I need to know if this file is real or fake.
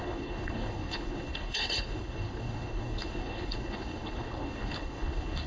fake